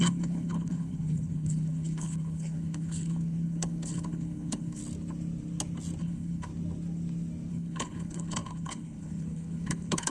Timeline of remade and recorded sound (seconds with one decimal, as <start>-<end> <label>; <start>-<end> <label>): 0.0-4.8 remade; 4.8-6.0 recorded; 6.0-6.5 remade; 6.5-7.5 recorded; 7.5-10.1 remade